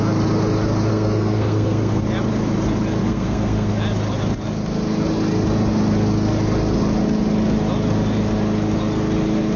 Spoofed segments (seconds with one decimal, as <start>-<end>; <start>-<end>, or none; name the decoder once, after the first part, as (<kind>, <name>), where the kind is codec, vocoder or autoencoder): 0.9-2.0 (codec, SNAC); 3.0-3.7